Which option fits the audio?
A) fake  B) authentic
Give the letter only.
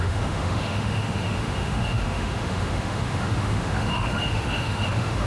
A